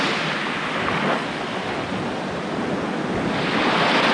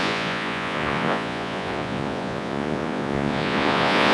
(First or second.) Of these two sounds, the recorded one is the first